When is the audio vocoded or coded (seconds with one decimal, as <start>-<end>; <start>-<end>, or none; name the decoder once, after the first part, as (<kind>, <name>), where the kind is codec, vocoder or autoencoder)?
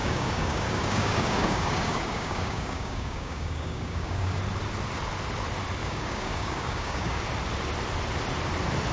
0.0-4.4 (codec, DAC); 5.8-7.2